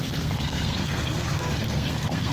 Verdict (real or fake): fake